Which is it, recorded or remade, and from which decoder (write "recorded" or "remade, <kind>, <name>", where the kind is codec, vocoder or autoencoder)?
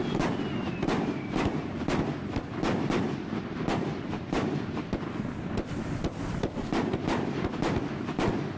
recorded